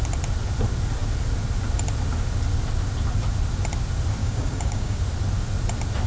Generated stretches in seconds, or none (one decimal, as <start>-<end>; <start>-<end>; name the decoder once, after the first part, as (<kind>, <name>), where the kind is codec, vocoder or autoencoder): 4.2-5.0 (codec, DAC)

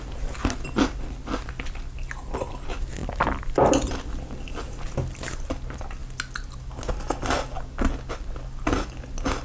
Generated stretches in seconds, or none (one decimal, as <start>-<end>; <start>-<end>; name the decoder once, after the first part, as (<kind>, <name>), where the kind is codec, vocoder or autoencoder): none

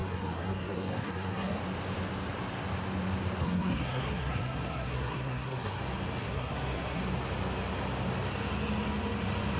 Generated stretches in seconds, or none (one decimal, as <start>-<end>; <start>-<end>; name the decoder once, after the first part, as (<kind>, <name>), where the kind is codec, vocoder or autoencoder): 0.0-1.6 (codec, SNAC); 3.4-5.8; 6.2-7.0

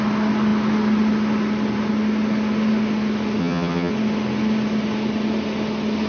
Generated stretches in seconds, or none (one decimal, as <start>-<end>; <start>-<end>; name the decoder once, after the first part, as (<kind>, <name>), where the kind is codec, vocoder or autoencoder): 3.4-3.9 (vocoder, HiFi-GAN)

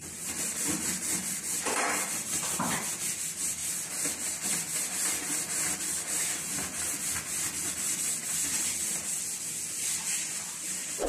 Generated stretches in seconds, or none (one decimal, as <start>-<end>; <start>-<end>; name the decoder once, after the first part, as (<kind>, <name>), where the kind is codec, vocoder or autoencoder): 0.0-0.6 (vocoder, BigVGAN v2)